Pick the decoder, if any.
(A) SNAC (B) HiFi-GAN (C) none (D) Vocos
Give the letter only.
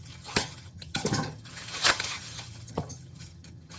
B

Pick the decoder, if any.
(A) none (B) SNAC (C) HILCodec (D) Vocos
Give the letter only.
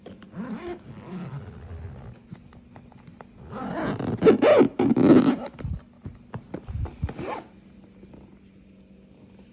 A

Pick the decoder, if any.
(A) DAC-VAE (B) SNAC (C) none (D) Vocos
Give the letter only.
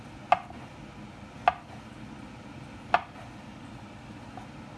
C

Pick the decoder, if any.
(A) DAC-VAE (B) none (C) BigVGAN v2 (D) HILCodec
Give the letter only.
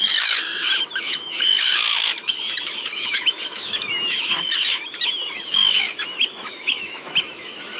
A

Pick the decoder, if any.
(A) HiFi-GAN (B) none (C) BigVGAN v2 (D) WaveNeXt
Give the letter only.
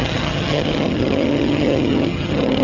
A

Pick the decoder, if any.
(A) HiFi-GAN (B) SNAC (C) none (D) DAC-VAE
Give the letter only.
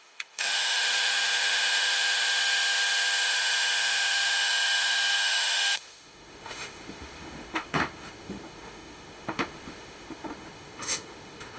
D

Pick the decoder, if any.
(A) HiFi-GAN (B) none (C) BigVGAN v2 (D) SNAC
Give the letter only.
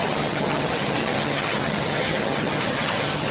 A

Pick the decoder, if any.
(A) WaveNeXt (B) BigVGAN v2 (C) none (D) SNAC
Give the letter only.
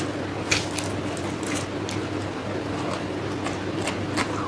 C